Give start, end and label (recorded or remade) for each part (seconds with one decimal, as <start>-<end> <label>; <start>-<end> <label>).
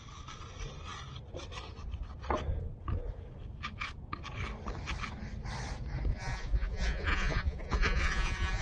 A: 0.0-6.1 recorded; 6.1-8.6 remade